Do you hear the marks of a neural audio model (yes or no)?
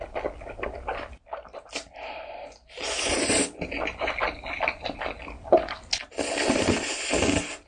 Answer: no